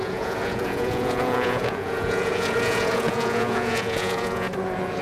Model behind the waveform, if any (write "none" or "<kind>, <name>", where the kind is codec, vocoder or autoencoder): vocoder, Vocos